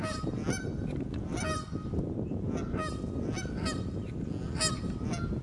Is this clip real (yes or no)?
yes